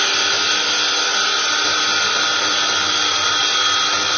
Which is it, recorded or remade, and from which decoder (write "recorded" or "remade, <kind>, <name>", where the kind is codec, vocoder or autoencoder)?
recorded